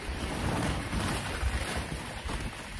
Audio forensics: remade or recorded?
recorded